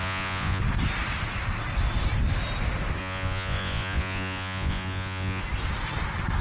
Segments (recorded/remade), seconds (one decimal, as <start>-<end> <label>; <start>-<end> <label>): 0.0-0.6 remade; 0.6-3.0 recorded; 3.0-5.4 remade; 5.4-6.4 recorded